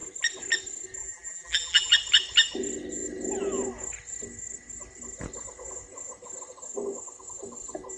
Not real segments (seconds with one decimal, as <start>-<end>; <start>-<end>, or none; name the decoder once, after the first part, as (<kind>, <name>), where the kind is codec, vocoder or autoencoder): 1.0-1.9 (vocoder, BigVGAN v2)